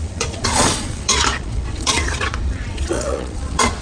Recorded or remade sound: remade